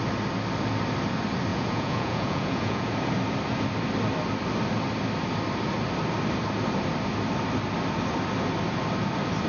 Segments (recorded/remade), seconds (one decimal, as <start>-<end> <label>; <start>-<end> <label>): 0.0-1.5 recorded; 1.5-2.9 remade; 2.9-9.5 recorded